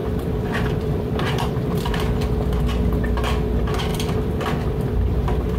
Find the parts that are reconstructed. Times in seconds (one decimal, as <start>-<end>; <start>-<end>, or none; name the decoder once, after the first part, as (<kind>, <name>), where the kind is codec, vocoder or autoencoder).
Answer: 0.0-1.9 (vocoder, BigVGAN v2); 3.9-4.4